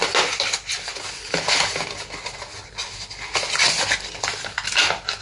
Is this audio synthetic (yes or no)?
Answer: no